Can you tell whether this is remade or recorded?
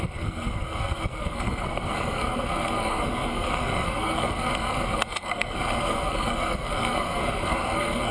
remade